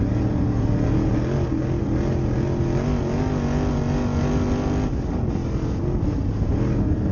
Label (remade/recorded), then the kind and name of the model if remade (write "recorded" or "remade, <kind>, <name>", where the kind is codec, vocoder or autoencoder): recorded